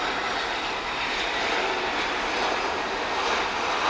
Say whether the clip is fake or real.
real